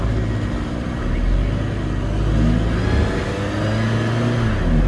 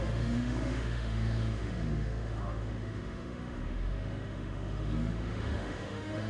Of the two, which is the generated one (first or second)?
second